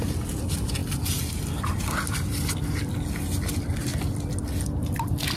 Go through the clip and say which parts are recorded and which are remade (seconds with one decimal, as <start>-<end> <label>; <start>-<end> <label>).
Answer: 0.0-5.4 recorded